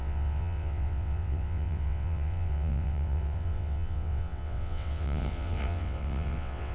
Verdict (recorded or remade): remade